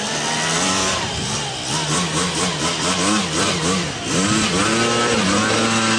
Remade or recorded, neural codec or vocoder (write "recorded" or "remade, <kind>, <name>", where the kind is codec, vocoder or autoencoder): remade, vocoder, BigVGAN v2